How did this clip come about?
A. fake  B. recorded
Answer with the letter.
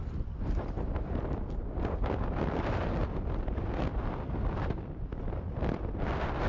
A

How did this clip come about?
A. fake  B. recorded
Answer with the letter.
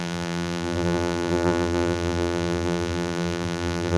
A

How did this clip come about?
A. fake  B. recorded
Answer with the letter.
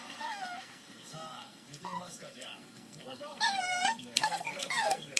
A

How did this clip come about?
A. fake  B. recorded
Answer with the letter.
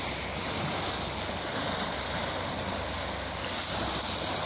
B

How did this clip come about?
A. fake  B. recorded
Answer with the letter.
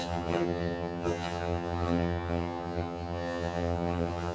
A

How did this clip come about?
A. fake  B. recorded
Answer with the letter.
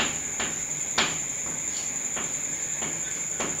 B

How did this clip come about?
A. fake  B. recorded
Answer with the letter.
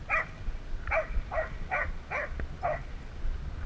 B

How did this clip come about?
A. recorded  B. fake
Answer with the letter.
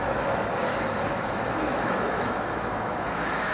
B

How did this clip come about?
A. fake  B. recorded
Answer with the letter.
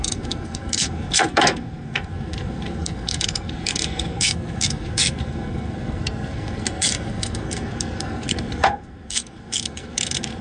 A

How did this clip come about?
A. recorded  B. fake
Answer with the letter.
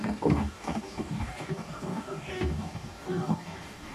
B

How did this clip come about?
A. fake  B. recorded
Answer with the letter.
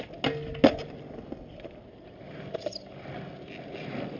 B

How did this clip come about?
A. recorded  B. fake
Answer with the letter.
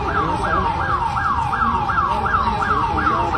A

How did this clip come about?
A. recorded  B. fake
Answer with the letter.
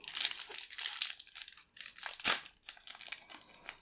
A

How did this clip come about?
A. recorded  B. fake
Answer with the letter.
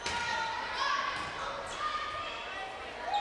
A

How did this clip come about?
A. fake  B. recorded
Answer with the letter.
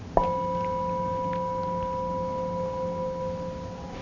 B